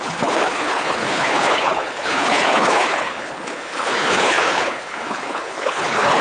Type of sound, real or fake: fake